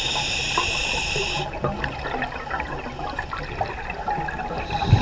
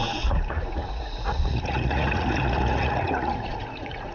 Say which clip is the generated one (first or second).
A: second